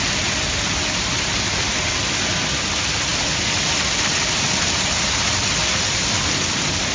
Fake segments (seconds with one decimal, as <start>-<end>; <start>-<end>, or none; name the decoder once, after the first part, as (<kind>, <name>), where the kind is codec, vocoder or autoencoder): none